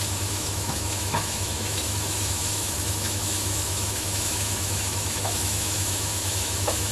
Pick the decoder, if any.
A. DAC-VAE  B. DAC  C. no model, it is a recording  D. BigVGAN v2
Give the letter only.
A